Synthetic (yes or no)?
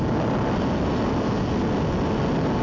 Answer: no